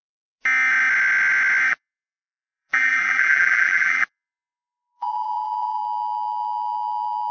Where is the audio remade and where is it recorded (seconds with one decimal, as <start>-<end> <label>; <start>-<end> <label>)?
0.0-1.7 recorded; 1.7-5.8 remade; 5.8-7.3 recorded